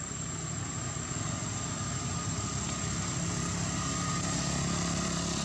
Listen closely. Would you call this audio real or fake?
real